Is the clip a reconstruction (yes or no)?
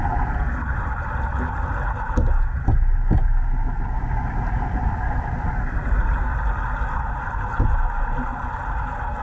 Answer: no